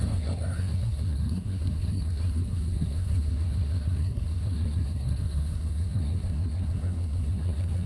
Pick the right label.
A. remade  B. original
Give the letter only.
A